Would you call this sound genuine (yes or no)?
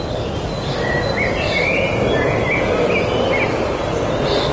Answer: yes